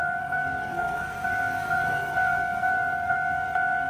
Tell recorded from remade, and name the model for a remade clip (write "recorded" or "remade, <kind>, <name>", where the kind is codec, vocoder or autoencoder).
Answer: remade, codec, SNAC